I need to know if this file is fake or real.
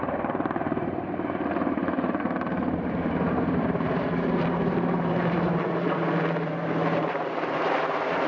fake